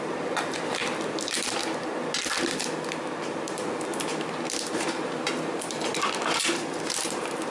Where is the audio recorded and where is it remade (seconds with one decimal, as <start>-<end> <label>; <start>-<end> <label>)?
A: 0.0-0.8 remade; 0.8-3.4 recorded; 3.4-3.9 remade; 3.9-4.7 recorded; 4.7-5.9 remade; 5.9-6.9 recorded; 6.9-7.5 remade